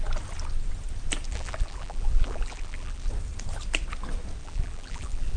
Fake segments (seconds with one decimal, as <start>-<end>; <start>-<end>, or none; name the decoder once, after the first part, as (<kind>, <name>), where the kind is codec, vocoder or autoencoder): 1.3-3.1 (vocoder, BigVGAN v2); 4.4-5.4